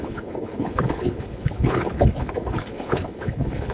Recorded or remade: remade